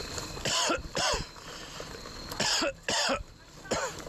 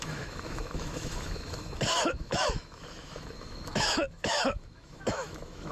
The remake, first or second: second